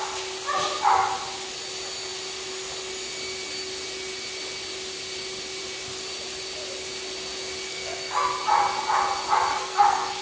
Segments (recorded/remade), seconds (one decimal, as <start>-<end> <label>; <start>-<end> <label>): 0.0-7.7 recorded; 7.7-8.3 remade; 8.3-9.5 recorded; 9.5-10.2 remade